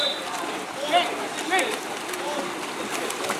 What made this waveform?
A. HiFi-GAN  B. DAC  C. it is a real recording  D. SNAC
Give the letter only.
C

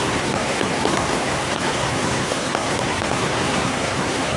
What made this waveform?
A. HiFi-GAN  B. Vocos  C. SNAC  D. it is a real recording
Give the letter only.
C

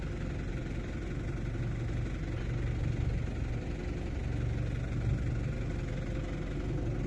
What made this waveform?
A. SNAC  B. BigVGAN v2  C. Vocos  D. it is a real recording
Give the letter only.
D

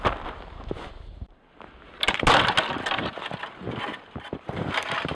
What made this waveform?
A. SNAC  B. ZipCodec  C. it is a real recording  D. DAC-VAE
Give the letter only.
C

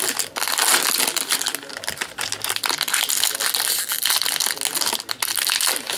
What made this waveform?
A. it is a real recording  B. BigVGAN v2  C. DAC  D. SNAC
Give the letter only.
A